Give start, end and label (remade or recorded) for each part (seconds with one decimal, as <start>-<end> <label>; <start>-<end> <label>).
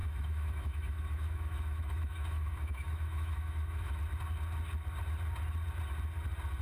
0.0-4.0 remade; 4.0-6.6 recorded